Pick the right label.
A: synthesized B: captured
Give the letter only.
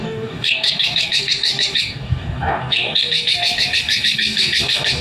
A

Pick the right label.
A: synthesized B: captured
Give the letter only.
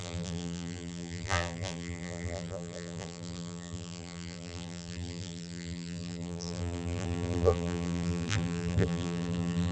A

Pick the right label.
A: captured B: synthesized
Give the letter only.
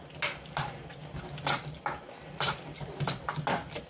A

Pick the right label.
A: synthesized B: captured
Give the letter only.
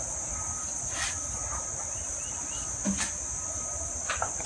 B